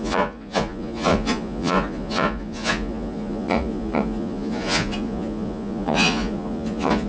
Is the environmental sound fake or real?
fake